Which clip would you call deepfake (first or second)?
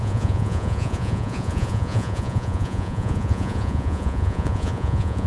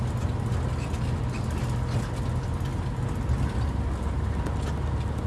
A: first